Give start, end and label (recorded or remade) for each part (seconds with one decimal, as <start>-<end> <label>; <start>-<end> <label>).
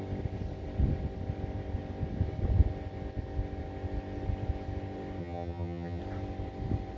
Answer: 0.0-5.2 recorded; 5.2-6.0 remade; 6.0-7.0 recorded